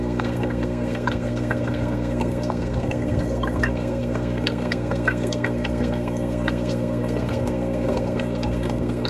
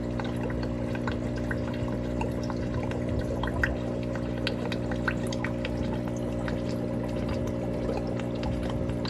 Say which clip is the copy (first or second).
first